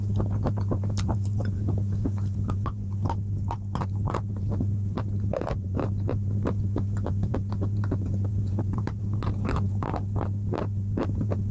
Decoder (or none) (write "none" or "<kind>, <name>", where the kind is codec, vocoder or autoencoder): vocoder, BigVGAN v2